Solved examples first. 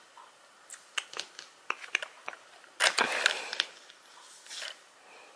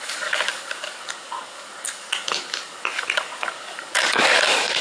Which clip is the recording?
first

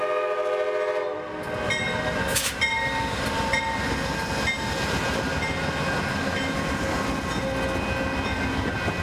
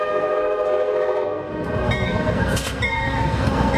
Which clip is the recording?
first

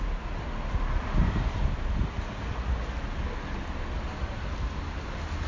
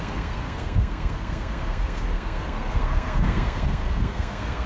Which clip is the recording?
first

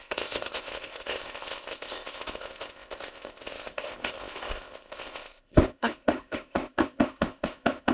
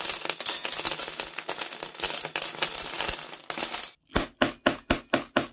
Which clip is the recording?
second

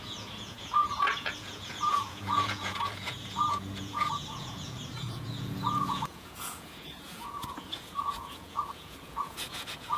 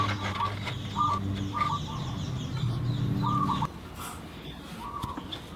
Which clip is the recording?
second